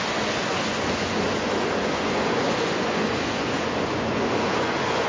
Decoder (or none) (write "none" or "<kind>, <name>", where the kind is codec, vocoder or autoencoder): vocoder, Vocos